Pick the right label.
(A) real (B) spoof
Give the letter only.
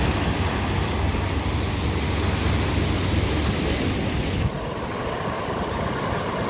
A